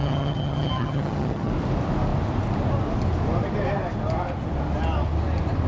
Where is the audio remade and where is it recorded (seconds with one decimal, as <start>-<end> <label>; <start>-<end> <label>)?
0.0-1.5 remade; 1.5-5.7 recorded